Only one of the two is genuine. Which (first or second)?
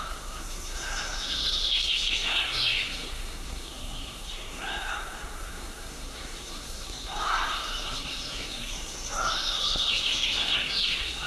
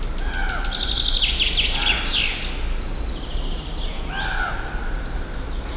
second